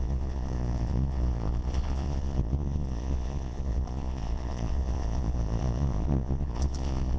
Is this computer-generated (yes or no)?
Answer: yes